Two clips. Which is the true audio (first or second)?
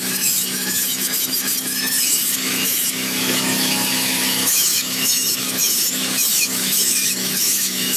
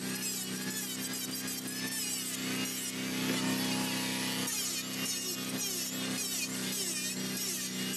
second